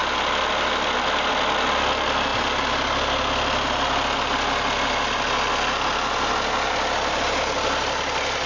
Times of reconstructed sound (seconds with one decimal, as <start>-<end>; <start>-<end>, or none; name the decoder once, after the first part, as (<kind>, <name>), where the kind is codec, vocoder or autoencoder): 0.0-1.3 (vocoder, BigVGAN v2)